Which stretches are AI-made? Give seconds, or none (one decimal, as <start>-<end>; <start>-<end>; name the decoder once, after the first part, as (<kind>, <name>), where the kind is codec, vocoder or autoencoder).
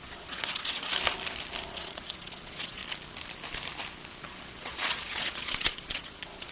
0.0-0.9 (vocoder, Vocos); 1.7-2.8; 4.2-6.5